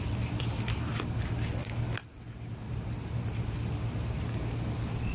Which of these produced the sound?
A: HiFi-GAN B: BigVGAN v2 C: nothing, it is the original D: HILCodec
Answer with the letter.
C